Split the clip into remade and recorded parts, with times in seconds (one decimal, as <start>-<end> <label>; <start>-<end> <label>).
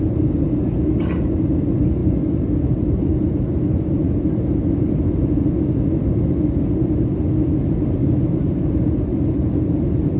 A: 0.0-10.2 recorded